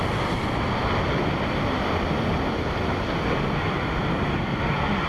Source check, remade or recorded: recorded